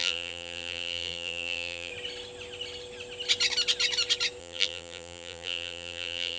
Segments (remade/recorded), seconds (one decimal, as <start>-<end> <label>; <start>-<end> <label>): 0.0-1.9 remade; 1.9-4.4 recorded; 4.4-6.4 remade